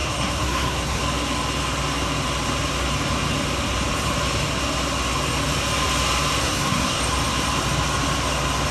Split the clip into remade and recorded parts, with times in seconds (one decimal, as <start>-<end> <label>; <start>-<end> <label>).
0.0-1.0 remade; 1.0-6.4 recorded; 6.4-7.0 remade; 7.0-8.7 recorded